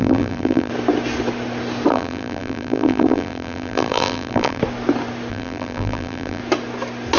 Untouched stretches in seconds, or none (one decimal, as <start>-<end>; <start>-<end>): 0.7-1.9; 4.6-5.3; 6.4-7.2